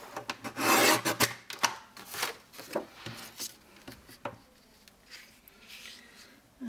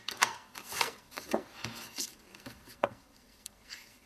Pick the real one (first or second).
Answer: first